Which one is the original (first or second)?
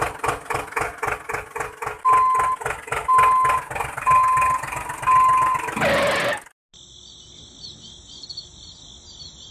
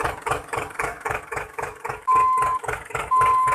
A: first